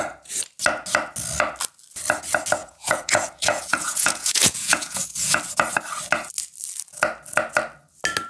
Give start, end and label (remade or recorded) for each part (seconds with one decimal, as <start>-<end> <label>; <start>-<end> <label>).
0.0-2.6 recorded; 2.6-5.4 remade; 5.4-8.3 recorded